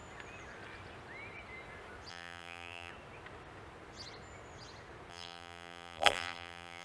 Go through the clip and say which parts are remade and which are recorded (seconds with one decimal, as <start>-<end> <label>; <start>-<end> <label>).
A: 0.0-2.1 recorded; 2.1-2.9 remade; 2.9-5.1 recorded; 5.1-6.8 remade